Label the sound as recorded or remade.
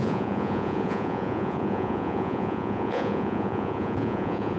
remade